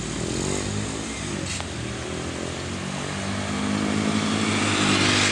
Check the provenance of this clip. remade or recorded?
recorded